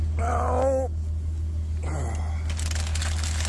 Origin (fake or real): real